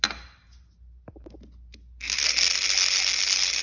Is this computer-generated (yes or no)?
no